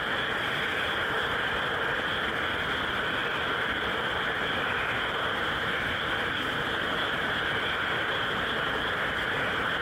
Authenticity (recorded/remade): recorded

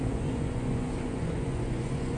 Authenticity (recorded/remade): remade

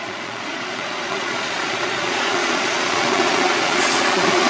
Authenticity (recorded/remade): remade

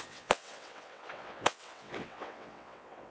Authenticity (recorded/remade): remade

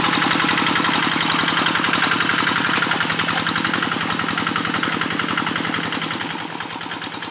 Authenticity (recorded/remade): recorded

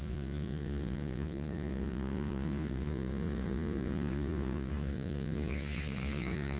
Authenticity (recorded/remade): remade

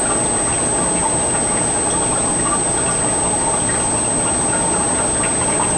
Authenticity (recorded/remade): recorded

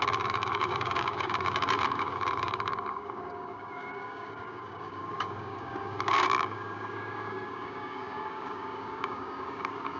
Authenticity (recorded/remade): remade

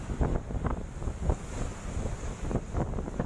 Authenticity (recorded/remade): recorded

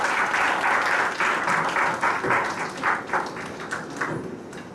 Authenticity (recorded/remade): recorded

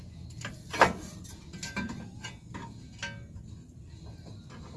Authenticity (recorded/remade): recorded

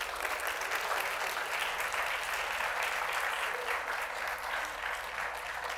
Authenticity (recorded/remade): recorded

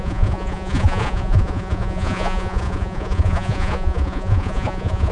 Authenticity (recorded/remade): remade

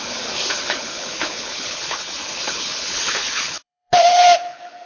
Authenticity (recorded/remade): remade